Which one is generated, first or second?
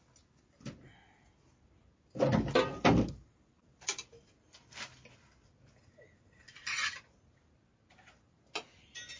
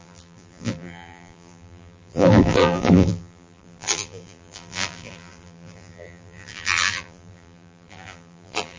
second